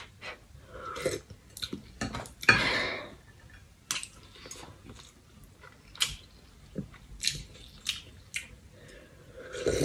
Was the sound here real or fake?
real